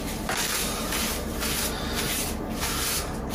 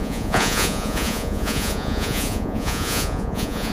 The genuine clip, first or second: first